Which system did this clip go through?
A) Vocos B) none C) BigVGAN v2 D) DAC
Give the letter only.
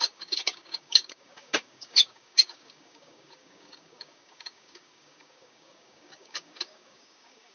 D